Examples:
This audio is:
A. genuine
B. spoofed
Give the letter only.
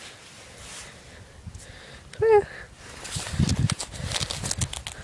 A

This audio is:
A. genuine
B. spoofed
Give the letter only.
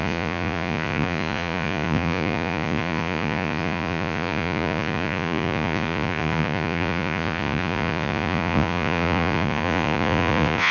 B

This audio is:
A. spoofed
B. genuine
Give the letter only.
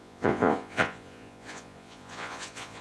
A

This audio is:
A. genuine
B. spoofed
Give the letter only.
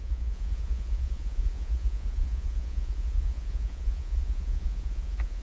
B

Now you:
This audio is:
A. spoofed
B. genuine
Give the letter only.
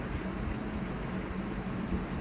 B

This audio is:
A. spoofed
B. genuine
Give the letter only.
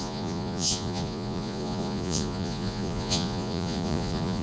A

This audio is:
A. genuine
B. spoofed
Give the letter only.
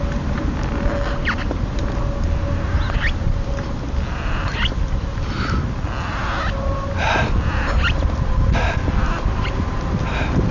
A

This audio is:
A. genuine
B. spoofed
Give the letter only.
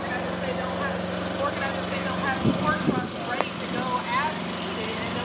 A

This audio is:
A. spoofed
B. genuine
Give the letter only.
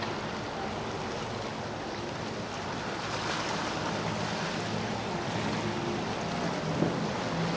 B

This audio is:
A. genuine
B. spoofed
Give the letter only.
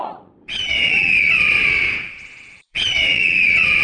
B